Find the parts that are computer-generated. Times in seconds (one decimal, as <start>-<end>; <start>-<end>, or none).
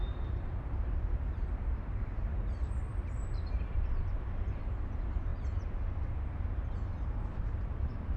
0.0-5.3; 6.3-8.2